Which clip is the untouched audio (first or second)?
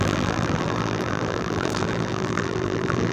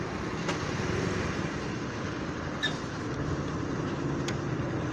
second